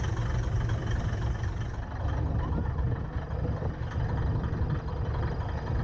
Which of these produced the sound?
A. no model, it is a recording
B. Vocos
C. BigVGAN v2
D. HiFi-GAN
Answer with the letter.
A